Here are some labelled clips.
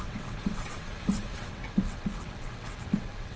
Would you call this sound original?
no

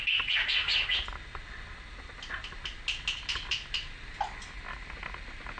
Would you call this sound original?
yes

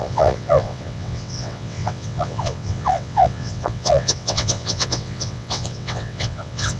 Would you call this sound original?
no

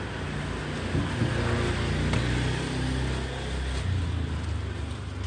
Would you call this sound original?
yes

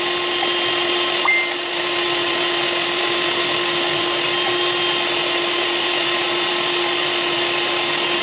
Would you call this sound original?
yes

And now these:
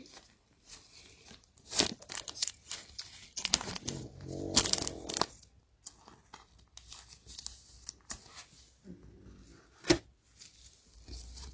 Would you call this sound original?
yes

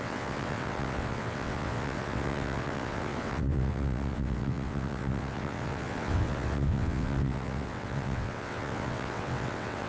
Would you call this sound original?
no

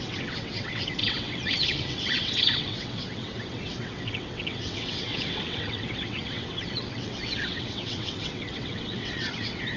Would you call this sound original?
no